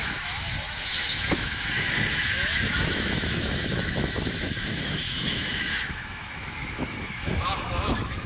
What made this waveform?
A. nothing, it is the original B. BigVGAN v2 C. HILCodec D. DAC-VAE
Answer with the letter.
D